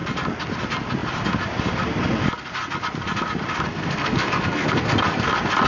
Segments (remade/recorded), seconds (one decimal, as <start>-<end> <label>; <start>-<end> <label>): 0.0-3.7 recorded; 3.7-5.3 remade; 5.3-5.7 recorded